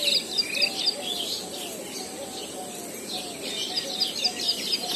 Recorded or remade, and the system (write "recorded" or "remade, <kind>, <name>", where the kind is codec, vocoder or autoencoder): recorded